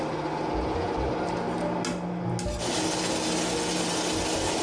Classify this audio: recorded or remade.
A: recorded